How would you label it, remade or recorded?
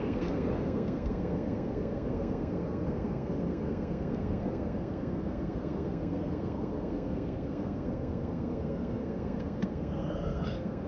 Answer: remade